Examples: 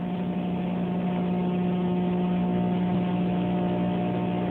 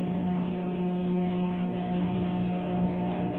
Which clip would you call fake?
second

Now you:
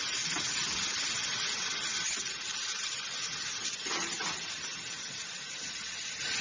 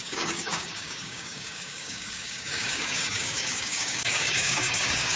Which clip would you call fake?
second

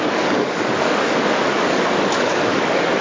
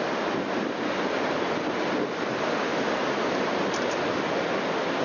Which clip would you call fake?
first